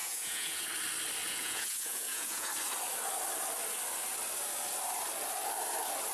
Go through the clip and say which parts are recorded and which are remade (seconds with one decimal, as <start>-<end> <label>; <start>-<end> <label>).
0.0-0.7 remade; 0.7-1.2 recorded; 1.2-2.5 remade; 2.5-6.1 recorded